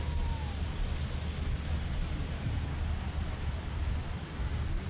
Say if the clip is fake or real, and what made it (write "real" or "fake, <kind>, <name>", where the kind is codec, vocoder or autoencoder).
real